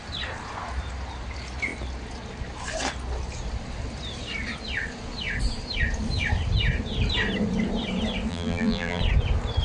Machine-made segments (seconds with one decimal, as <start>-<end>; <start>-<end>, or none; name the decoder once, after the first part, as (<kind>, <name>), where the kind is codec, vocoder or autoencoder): 8.3-9.0 (vocoder, BigVGAN v2)